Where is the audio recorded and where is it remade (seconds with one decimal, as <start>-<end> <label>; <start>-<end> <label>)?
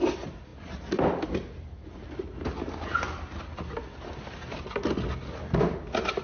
0.0-6.2 recorded